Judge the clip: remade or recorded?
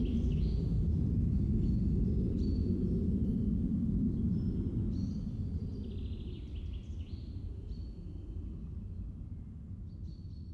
recorded